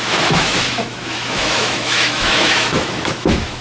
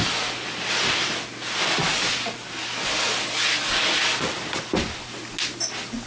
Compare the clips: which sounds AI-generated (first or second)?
first